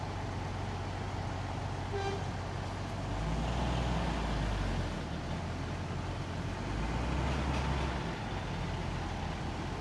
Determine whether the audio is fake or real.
real